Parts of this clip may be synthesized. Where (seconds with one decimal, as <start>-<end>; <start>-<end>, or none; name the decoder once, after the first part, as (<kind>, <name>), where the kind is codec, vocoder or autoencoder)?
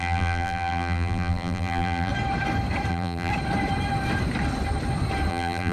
0.0-2.1 (vocoder, BigVGAN v2); 2.9-3.3; 5.3-5.7